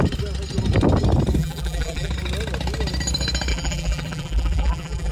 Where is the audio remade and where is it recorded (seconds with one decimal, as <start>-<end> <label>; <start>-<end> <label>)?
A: 0.0-1.4 recorded; 1.4-2.1 remade; 2.1-3.5 recorded; 3.5-5.1 remade